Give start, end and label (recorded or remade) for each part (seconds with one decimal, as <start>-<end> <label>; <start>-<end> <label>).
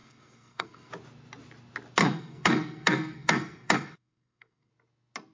0.0-0.9 remade; 0.9-2.0 recorded; 2.0-4.7 remade; 4.7-5.3 recorded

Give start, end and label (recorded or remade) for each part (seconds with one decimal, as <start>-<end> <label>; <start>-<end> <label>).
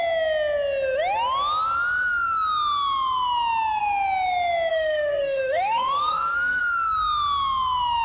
0.0-4.7 recorded; 4.7-6.6 remade; 6.6-8.0 recorded